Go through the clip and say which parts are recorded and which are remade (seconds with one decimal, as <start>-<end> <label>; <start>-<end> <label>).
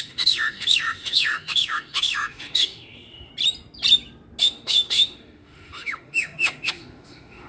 0.0-3.3 remade; 3.3-4.4 recorded; 4.4-7.5 remade